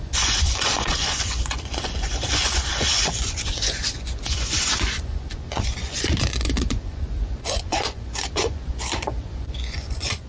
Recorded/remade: remade